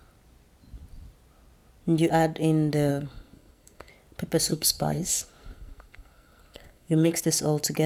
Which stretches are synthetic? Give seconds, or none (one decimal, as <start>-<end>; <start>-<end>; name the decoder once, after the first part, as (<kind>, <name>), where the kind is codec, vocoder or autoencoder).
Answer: 2.9-3.9 (codec, SNAC); 4.5-7.2